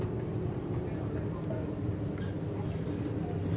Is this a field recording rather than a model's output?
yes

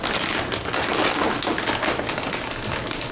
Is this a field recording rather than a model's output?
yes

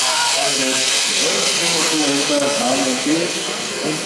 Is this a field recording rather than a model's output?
no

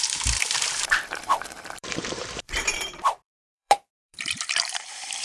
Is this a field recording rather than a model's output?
no